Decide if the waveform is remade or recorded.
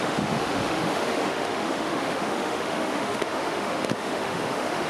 remade